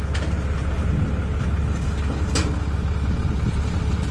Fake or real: real